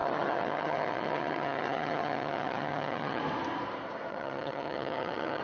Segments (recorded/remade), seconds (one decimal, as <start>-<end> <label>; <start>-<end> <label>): 0.0-3.2 remade; 3.2-4.1 recorded; 4.1-5.4 remade